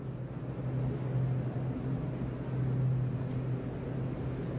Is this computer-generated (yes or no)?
no